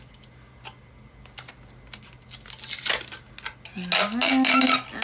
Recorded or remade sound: recorded